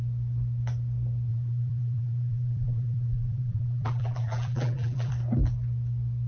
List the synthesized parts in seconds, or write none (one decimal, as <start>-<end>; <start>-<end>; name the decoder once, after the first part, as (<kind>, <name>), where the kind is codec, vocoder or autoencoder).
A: 1.3-5.1 (vocoder, BigVGAN v2)